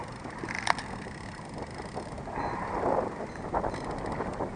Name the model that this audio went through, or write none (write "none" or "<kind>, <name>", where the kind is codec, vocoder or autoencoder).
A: none